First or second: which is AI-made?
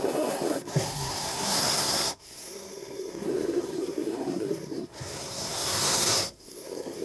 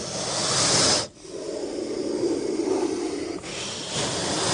first